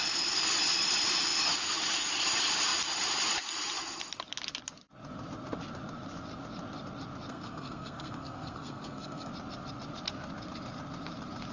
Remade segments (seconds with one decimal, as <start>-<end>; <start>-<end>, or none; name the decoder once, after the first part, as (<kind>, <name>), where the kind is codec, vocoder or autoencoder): 7.3-9.3 (codec, SNAC)